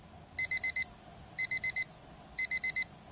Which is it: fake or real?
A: real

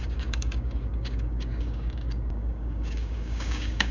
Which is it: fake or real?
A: fake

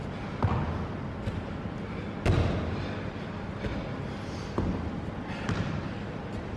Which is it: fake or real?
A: real